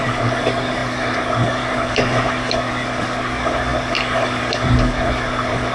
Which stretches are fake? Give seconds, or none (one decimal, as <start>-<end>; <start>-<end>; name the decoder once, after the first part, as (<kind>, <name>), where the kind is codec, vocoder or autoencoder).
0.0-5.7 (codec, DAC)